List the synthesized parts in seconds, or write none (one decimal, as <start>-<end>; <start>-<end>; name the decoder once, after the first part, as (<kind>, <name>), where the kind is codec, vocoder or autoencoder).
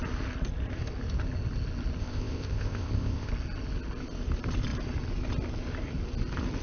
2.0-3.3 (codec, ZipCodec)